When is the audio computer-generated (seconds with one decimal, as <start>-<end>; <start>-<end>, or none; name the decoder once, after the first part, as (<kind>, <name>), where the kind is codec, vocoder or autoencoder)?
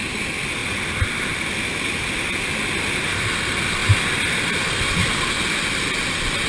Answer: none